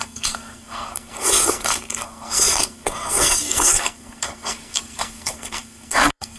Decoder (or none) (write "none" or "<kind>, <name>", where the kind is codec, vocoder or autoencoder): codec, SNAC